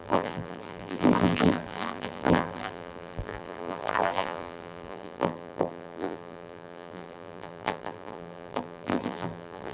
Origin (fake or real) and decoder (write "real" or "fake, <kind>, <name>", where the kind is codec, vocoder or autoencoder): fake, vocoder, BigVGAN v2